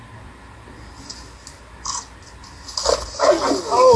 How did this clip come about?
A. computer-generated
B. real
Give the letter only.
B